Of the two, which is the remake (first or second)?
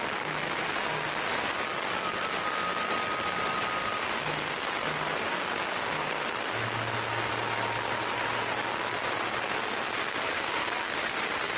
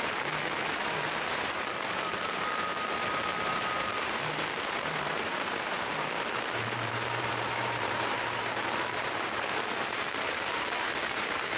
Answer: second